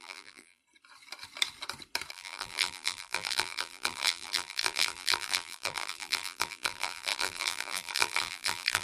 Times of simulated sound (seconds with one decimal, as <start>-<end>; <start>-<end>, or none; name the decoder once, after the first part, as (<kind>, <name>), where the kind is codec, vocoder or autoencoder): 0.0-0.6 (vocoder, BigVGAN v2); 2.1-8.8